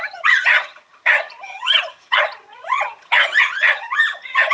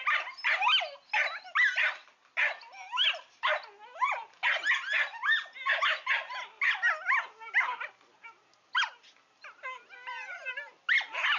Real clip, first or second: second